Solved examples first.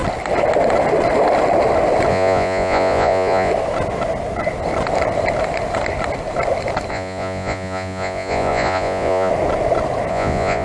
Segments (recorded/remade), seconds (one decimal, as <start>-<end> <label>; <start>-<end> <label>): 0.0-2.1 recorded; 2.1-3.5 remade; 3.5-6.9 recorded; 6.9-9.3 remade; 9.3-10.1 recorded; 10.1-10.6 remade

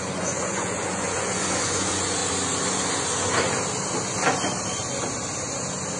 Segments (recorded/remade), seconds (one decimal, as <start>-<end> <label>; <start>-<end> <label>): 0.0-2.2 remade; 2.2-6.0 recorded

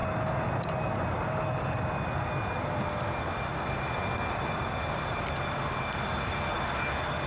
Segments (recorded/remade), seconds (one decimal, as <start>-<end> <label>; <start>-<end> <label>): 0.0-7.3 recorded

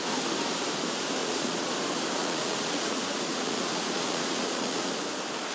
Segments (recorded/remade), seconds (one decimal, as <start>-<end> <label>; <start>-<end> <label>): 0.0-1.2 recorded; 1.2-1.7 remade; 1.7-2.2 recorded; 2.2-4.9 remade; 4.9-5.5 recorded

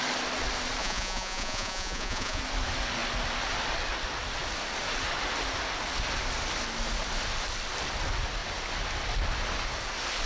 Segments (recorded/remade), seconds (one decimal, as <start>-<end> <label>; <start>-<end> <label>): 0.0-0.8 recorded; 0.8-2.4 remade; 2.4-10.3 recorded

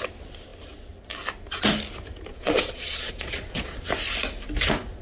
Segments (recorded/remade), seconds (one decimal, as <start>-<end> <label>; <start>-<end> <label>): 0.0-2.3 recorded; 2.3-3.8 remade; 3.8-5.0 recorded